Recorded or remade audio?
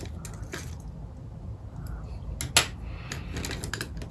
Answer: recorded